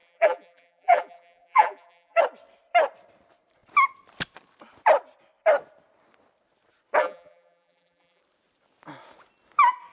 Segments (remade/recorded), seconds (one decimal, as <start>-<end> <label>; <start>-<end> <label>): 0.0-2.2 remade; 2.2-7.0 recorded; 7.0-8.2 remade; 8.2-9.9 recorded